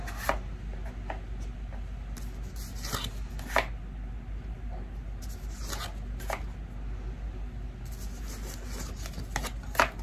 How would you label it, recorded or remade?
recorded